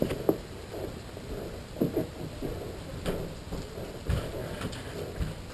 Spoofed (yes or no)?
no